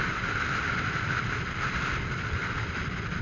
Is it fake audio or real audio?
real